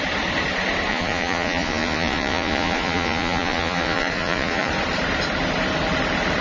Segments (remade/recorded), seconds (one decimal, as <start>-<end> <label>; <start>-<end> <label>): 0.0-0.9 recorded; 0.9-4.7 remade; 4.7-6.4 recorded